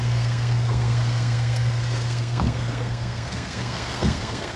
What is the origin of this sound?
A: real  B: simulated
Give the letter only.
B